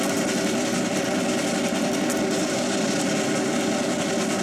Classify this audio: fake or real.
real